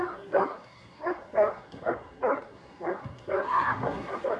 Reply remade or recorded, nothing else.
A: remade